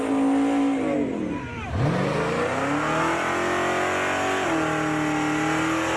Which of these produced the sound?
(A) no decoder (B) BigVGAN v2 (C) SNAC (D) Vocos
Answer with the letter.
A